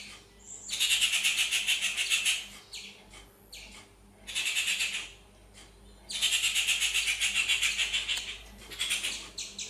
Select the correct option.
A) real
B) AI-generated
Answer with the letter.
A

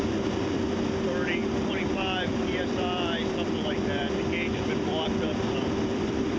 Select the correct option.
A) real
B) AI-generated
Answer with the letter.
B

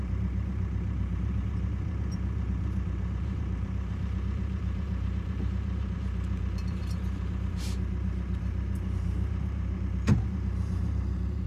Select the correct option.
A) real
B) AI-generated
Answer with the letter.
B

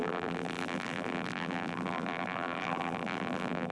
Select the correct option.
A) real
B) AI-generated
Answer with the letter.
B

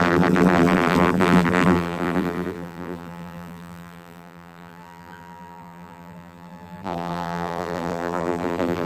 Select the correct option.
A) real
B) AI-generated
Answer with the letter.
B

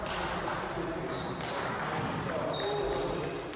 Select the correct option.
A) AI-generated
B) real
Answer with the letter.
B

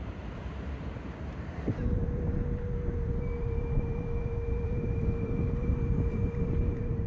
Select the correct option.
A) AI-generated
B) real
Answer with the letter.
A